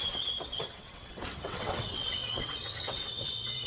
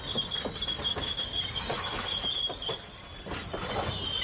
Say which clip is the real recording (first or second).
second